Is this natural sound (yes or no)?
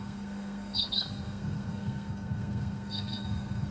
no